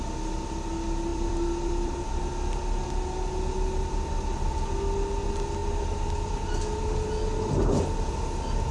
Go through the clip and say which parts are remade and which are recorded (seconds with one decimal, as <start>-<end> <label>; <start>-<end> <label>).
0.0-1.1 recorded; 1.1-2.2 remade; 2.2-8.7 recorded